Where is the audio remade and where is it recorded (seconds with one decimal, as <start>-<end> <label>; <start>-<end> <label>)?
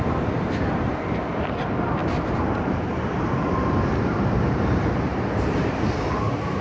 0.0-6.6 remade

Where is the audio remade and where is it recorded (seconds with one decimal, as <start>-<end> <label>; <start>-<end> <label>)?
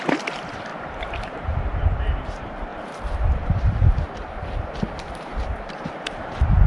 0.0-0.7 remade; 0.7-1.2 recorded; 1.2-6.7 remade